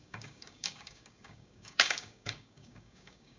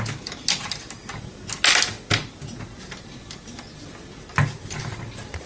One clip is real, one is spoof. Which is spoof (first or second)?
first